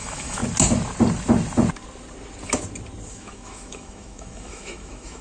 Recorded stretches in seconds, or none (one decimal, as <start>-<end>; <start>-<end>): 0.4-3.1